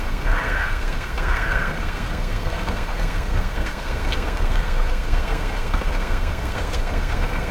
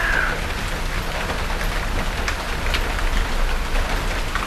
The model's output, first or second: first